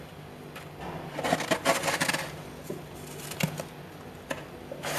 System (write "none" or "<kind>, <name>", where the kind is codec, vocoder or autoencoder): none